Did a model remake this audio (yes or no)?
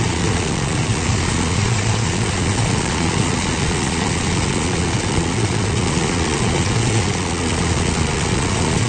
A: yes